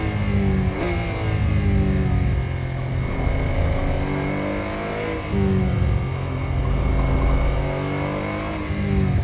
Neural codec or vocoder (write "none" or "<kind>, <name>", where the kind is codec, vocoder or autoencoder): none